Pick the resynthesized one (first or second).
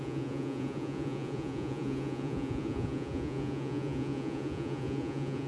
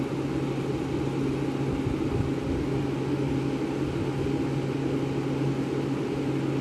first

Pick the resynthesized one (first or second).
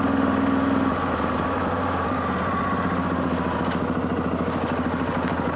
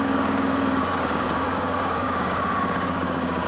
second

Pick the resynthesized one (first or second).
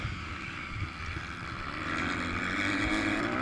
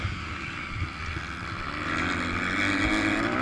first